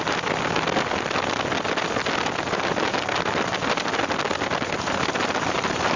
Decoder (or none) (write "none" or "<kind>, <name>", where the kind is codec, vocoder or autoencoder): none